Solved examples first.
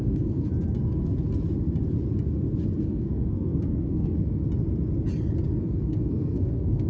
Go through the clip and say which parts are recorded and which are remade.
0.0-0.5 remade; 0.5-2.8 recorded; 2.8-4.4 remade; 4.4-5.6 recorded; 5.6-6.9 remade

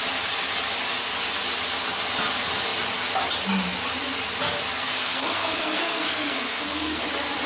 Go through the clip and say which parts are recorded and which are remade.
0.0-4.8 recorded; 4.8-7.0 remade; 7.0-7.5 recorded